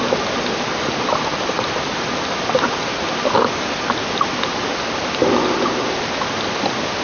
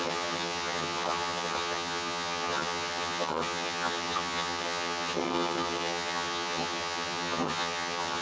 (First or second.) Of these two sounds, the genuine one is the first